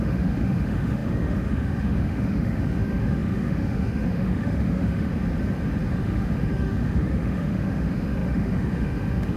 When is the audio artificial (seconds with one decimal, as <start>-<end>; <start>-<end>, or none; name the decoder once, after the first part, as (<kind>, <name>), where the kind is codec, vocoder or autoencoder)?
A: 0.0-5.1 (autoencoder, DAC-VAE); 5.9-9.4